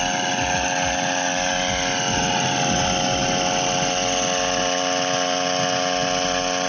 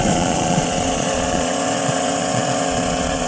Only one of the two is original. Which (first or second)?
first